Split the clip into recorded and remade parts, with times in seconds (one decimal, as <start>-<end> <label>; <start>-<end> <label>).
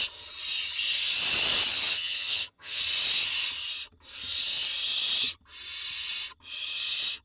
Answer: 0.0-1.7 recorded; 1.7-2.8 remade; 2.8-7.2 recorded